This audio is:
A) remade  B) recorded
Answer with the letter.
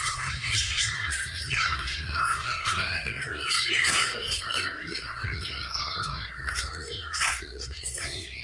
A